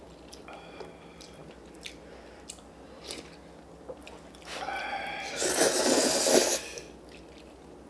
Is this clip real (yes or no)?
yes